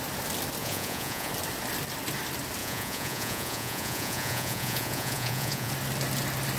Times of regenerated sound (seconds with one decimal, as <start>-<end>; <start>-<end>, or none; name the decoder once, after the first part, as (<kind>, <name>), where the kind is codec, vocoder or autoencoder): 0.6-1.3 (vocoder, Vocos); 2.6-5.7